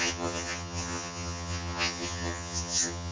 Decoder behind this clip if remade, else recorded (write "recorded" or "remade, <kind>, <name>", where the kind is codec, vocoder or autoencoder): remade, vocoder, HiFi-GAN